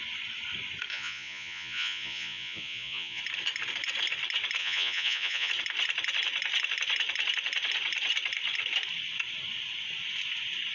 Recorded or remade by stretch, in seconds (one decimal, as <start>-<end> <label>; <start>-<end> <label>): 0.0-0.9 recorded; 0.9-3.2 remade; 3.2-4.6 recorded; 4.6-5.5 remade; 5.5-10.7 recorded